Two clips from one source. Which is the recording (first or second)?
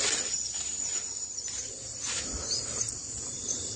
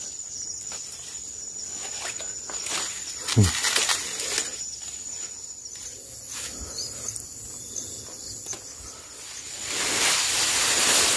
second